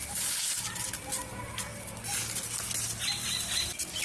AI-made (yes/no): no